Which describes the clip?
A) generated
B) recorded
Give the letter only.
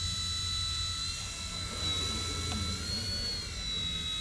B